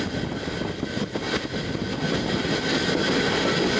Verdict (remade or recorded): recorded